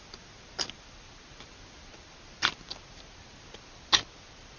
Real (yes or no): yes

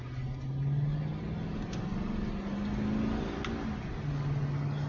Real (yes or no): yes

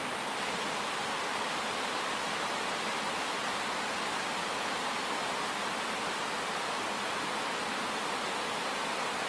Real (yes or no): yes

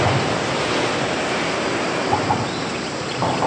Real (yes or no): yes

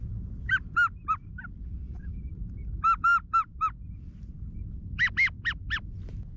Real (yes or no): yes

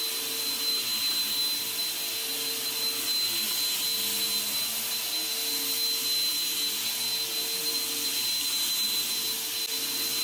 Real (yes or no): yes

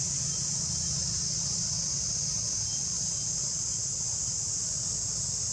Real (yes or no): yes